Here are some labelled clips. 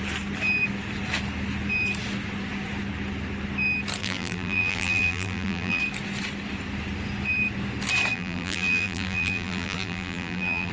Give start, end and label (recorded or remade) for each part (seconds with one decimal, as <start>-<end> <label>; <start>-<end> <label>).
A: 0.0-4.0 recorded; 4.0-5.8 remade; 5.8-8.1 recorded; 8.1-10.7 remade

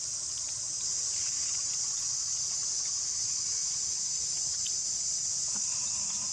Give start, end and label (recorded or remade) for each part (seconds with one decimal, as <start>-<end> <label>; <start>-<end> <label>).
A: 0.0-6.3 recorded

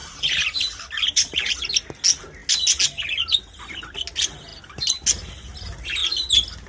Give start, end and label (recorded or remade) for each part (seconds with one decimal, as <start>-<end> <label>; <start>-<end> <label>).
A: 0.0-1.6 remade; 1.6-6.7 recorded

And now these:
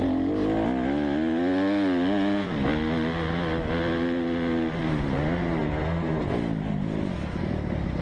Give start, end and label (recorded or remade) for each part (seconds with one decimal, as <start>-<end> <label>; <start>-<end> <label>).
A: 0.0-8.0 recorded

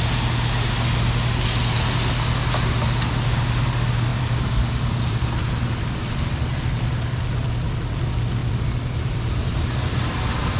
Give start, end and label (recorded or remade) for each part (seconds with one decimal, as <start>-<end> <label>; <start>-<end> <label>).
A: 0.0-4.1 recorded; 4.1-7.9 remade; 7.9-8.4 recorded; 8.4-10.0 remade; 10.0-10.6 recorded

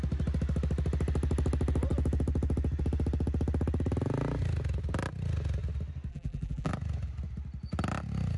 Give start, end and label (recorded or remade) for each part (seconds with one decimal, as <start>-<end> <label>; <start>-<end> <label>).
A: 0.0-6.1 recorded; 6.1-6.7 remade; 6.7-8.4 recorded